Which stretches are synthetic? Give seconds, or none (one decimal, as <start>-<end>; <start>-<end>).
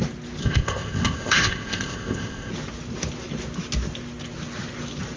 0.4-2.5